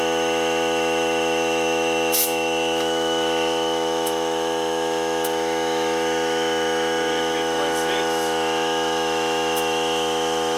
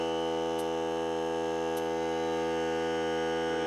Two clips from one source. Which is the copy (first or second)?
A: first